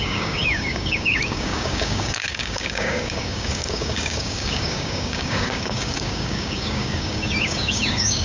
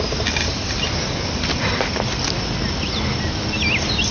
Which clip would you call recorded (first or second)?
second